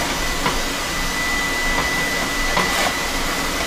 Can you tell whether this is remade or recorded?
recorded